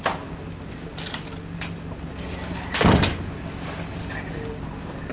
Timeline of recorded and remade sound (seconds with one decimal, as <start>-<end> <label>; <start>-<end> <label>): 0.0-5.1 recorded